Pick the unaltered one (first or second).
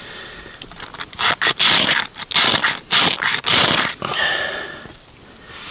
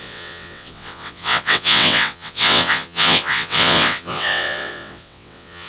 first